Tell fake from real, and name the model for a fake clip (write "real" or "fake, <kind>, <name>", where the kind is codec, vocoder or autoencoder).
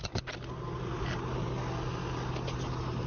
real